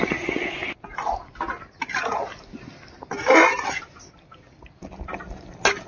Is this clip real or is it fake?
real